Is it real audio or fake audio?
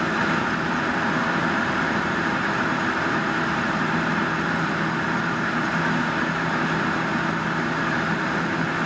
fake